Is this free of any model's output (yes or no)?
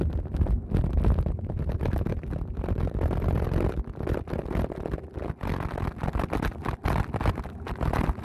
yes